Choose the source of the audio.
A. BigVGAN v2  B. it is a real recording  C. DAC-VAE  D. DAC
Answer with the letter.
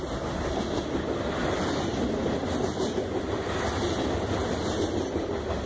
B